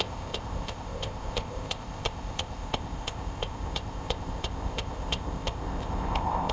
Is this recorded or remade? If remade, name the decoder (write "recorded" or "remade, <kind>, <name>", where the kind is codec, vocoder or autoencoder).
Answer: remade, codec, ZipCodec